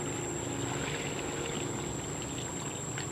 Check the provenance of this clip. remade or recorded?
recorded